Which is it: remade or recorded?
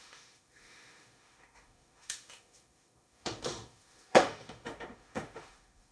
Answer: remade